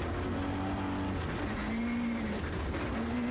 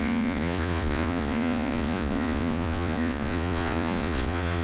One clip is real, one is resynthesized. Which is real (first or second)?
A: first